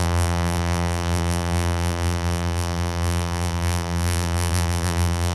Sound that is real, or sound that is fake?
fake